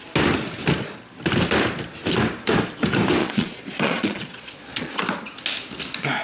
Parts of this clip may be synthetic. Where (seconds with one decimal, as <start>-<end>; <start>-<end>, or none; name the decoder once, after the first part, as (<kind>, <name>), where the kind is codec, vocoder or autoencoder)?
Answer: 3.2-5.0 (vocoder, Vocos)